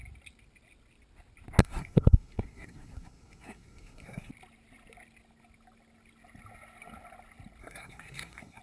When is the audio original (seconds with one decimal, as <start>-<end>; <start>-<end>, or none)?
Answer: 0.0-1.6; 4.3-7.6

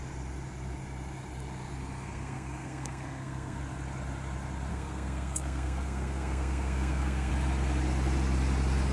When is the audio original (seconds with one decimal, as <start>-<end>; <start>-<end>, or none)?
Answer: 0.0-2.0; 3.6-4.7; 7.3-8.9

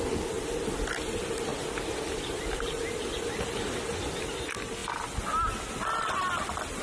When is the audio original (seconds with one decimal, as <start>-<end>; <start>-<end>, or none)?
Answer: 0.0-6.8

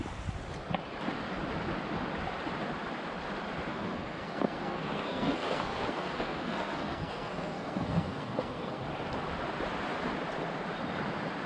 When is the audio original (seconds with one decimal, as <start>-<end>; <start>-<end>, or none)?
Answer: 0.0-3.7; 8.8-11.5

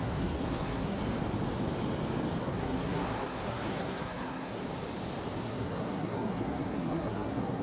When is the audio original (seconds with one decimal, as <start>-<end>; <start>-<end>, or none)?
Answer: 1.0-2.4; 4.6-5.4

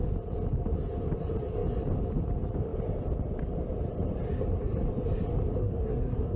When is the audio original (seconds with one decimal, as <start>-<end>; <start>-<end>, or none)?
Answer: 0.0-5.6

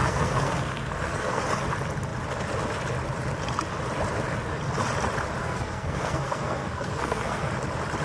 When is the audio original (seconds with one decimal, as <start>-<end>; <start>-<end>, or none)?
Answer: 1.4-5.4; 7.5-8.0